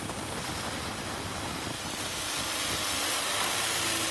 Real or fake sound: real